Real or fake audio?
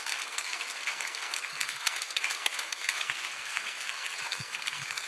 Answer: fake